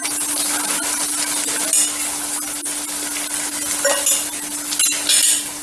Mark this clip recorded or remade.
recorded